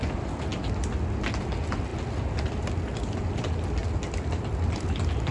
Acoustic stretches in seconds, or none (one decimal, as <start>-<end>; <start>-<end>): 0.0-5.3